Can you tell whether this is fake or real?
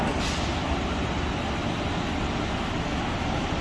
real